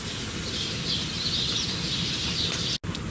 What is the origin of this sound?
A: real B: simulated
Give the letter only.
A